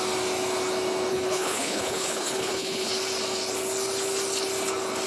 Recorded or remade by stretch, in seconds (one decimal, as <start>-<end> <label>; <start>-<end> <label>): 0.0-1.1 recorded; 1.1-2.9 remade; 2.9-5.1 recorded